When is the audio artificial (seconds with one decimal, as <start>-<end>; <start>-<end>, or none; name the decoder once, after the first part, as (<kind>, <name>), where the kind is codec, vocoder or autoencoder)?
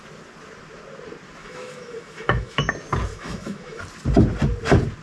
1.4-2.7 (autoencoder, DAC-VAE); 3.1-3.8